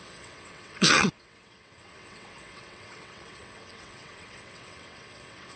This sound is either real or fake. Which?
fake